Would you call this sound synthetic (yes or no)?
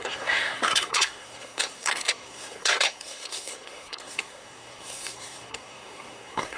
yes